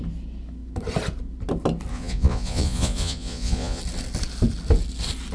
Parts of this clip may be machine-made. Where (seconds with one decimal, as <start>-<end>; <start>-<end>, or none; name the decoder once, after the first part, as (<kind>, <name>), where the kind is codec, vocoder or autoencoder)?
1.9-3.8 (vocoder, Vocos)

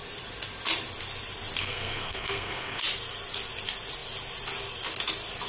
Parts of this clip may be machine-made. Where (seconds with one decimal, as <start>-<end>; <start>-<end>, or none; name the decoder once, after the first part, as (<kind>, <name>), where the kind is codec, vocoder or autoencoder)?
1.6-2.8 (codec, SNAC)

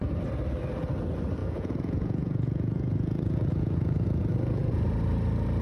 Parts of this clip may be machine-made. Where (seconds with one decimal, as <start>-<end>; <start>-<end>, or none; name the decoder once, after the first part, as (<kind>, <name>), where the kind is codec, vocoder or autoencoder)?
1.4-4.8 (vocoder, Vocos)

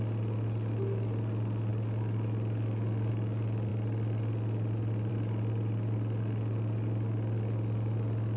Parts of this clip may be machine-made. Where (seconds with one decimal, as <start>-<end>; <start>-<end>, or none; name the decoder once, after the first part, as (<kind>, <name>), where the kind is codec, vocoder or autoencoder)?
none

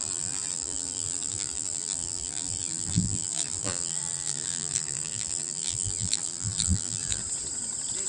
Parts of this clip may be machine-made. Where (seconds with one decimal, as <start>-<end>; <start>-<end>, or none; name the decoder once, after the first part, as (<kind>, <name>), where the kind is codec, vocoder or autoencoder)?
0.0-7.2 (vocoder, BigVGAN v2)

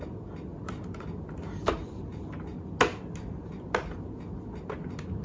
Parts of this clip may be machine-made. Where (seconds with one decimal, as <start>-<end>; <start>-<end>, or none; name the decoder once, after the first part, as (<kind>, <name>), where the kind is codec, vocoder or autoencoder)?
none

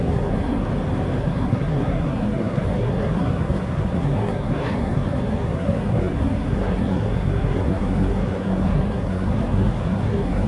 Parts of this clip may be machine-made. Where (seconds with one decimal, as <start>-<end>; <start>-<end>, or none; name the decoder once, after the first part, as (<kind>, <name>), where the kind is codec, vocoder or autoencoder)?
0.0-0.7 (codec, SNAC); 1.2-10.5

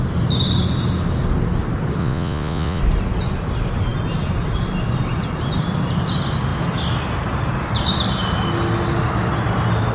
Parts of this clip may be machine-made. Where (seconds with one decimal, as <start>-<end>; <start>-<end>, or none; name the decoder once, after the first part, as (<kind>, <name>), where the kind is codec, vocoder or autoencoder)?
2.0-2.8 (vocoder, Vocos)